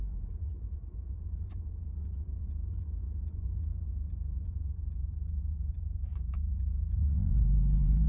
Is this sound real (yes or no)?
no